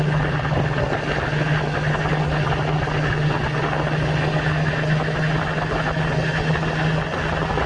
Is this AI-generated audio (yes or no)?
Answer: no